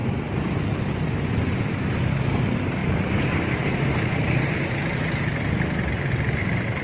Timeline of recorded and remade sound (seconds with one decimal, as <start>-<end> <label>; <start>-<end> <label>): 0.0-2.8 recorded; 2.8-6.1 remade; 6.1-6.8 recorded